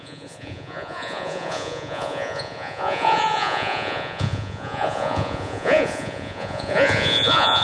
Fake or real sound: fake